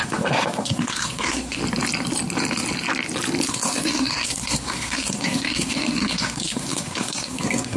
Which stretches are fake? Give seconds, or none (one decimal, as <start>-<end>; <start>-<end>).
0.0-1.6; 3.5-7.8